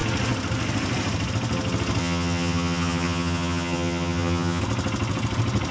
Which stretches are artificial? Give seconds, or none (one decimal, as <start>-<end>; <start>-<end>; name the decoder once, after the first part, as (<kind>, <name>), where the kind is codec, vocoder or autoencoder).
2.0-4.6 (vocoder, HiFi-GAN)